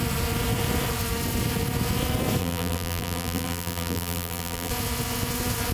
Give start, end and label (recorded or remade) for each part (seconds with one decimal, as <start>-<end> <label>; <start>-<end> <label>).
0.0-2.4 recorded; 2.4-4.7 remade; 4.7-5.7 recorded